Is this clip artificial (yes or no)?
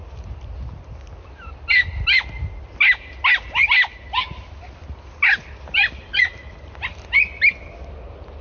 no